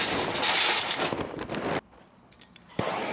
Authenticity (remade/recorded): recorded